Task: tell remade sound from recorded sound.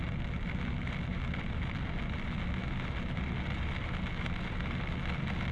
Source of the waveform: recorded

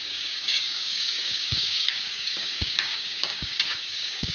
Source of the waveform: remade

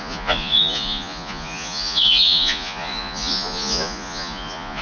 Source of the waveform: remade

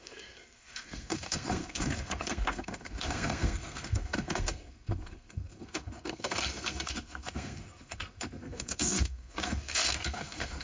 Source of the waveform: remade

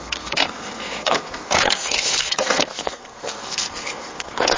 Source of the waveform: remade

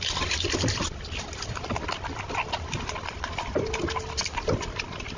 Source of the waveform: recorded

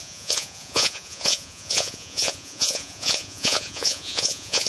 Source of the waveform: remade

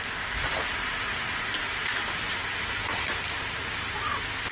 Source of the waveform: recorded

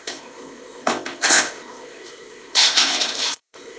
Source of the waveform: remade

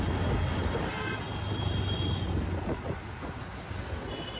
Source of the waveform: recorded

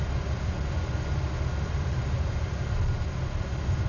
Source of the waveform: recorded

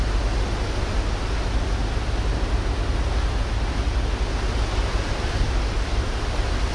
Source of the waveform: recorded